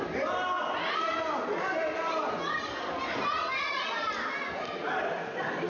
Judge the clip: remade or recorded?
recorded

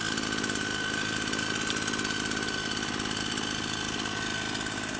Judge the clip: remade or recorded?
recorded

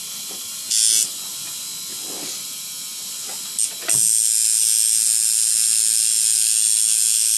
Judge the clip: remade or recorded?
recorded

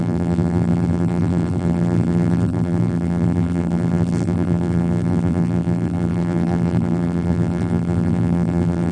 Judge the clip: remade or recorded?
remade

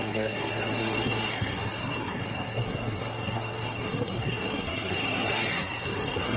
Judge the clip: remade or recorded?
remade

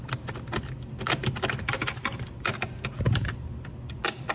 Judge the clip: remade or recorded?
recorded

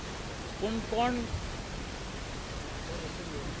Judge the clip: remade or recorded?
recorded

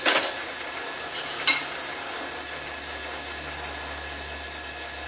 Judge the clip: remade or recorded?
recorded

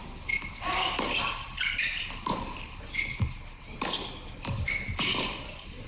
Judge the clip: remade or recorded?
remade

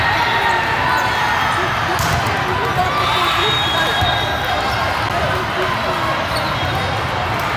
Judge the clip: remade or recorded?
recorded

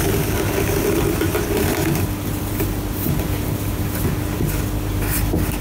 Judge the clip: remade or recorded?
recorded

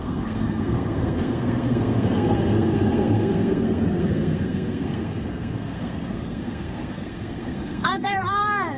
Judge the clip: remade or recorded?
remade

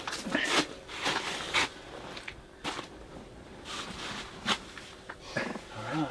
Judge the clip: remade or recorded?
recorded